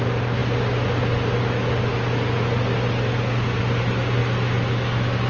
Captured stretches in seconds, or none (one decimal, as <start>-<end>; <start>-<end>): 0.0-5.3